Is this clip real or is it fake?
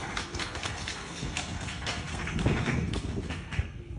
fake